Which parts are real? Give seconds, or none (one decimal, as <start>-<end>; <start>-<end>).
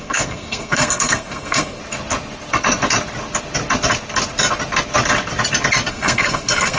1.8-5.9